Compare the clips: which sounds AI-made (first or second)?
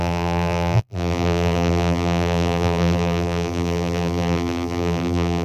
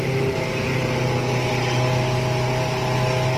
first